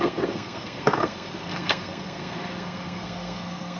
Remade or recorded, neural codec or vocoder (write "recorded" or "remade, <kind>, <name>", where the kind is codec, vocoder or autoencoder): remade, codec, SNAC